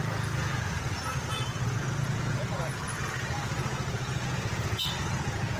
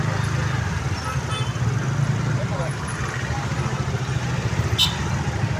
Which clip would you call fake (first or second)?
first